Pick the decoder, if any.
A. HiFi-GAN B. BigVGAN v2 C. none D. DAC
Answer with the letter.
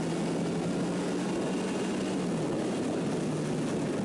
C